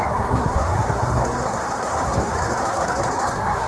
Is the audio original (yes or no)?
no